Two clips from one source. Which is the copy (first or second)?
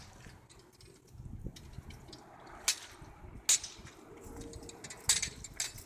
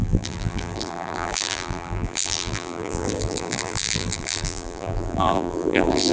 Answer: second